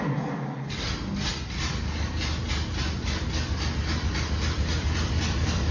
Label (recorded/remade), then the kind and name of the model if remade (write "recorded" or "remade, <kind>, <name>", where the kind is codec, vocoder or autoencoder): recorded